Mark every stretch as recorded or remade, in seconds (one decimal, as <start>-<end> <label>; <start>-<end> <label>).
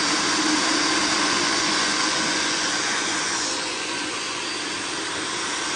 0.0-1.2 recorded; 1.2-4.4 remade; 4.4-5.8 recorded